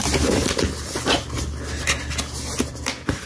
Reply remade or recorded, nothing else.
recorded